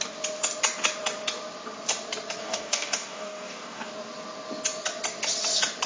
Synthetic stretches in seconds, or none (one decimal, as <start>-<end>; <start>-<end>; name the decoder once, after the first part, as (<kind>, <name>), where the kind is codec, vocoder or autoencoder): 2.4-3.9 (codec, DAC)